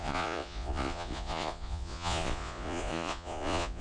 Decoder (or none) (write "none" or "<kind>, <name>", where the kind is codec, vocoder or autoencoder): vocoder, Vocos